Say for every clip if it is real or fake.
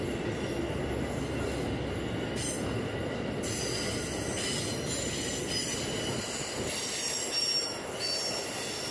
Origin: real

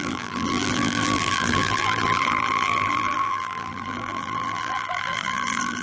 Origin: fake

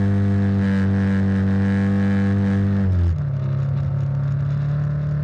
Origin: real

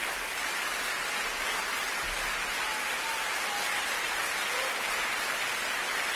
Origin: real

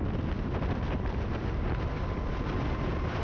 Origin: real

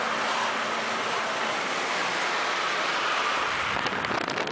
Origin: real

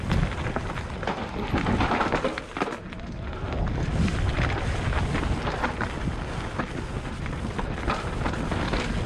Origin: real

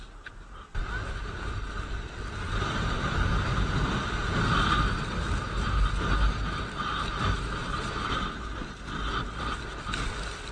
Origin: real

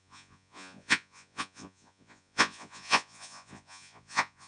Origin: fake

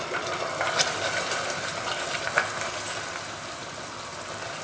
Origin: real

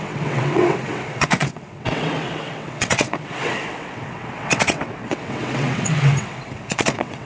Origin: fake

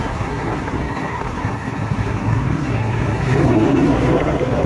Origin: fake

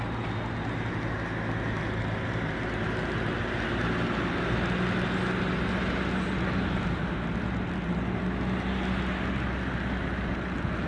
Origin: real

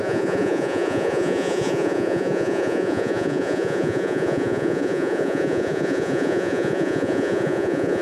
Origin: fake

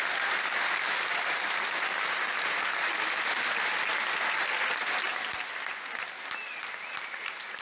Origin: real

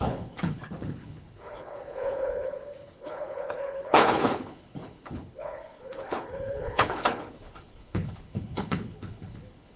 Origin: fake